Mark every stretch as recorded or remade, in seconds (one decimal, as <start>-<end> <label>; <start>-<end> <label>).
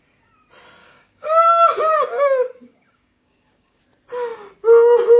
0.0-0.8 recorded; 0.8-3.8 remade; 3.8-5.2 recorded